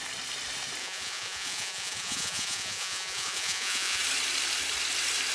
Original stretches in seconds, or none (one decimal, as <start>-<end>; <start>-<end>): 0.0-0.8; 4.0-5.3